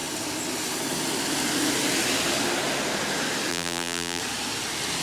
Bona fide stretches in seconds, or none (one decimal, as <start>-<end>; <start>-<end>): 0.0-3.5; 4.2-5.0